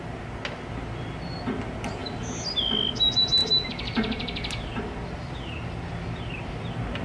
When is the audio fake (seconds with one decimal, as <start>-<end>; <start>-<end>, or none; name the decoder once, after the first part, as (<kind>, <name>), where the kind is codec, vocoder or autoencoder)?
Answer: none